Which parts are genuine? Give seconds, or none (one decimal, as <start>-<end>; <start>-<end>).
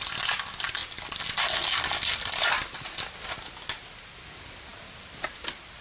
0.0-5.8